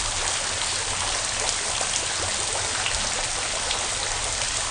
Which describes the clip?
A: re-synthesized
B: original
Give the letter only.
B